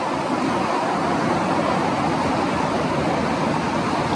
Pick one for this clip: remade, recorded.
recorded